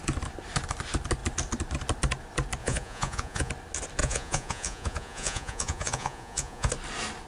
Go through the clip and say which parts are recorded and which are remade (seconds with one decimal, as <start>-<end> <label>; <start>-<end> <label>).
0.0-2.6 recorded; 2.6-3.5 remade; 3.5-4.0 recorded; 4.0-6.7 remade; 6.7-7.3 recorded